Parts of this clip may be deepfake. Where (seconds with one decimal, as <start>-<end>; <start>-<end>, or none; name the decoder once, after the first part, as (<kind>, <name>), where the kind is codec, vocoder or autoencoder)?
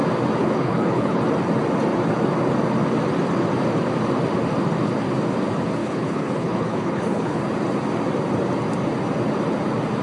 0.4-1.2 (codec, HILCodec); 5.8-7.4